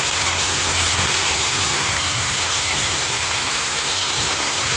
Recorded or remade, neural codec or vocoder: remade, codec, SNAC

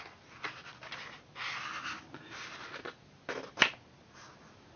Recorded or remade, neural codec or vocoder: recorded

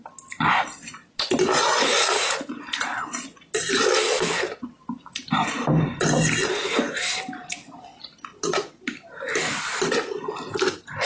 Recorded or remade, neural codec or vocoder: recorded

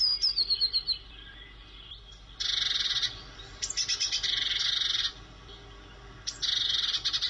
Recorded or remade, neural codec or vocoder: recorded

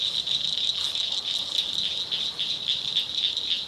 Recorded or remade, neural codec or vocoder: recorded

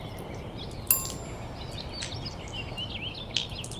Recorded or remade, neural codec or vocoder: recorded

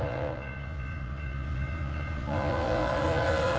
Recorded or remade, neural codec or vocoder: remade, vocoder, Vocos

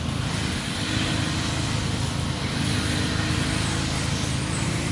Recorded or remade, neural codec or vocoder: recorded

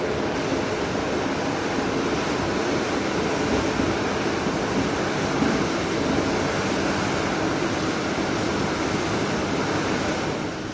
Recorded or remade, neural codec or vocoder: recorded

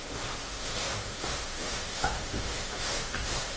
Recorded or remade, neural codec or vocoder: remade, autoencoder, DAC-VAE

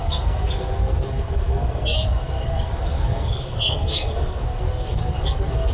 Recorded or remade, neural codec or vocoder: remade, codec, SNAC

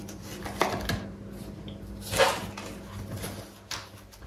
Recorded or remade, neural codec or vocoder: recorded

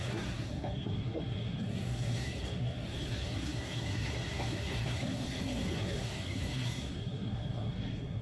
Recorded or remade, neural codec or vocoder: remade, codec, SNAC